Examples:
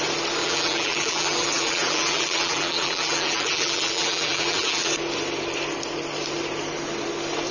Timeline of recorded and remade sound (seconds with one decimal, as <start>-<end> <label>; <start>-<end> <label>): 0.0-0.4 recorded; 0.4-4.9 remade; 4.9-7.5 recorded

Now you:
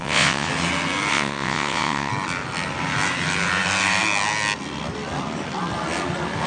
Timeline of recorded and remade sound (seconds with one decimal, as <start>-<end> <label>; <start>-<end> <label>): 0.0-0.5 remade; 0.5-1.1 recorded; 1.1-2.1 remade; 2.1-6.5 recorded

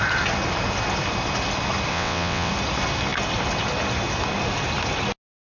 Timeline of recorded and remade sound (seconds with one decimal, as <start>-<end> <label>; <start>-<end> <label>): 0.0-1.9 recorded; 1.9-2.5 remade; 2.5-5.6 recorded